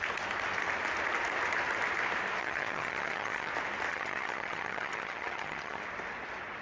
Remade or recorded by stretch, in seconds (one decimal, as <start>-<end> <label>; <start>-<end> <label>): 0.0-2.4 recorded; 2.4-3.5 remade; 3.5-3.9 recorded; 3.9-5.8 remade; 5.8-6.6 recorded